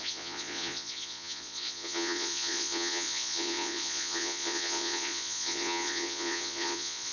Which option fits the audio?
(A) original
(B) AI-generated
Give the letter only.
B